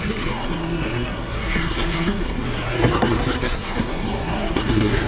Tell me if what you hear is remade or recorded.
remade